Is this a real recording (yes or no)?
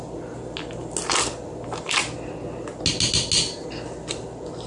yes